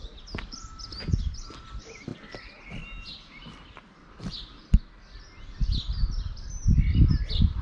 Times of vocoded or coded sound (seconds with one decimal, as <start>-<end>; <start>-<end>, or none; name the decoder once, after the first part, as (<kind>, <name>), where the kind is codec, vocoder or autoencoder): 2.1-2.6 (vocoder, BigVGAN v2); 3.4-4.4